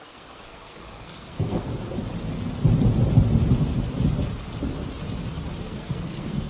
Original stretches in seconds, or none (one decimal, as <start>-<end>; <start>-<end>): 1.7-5.6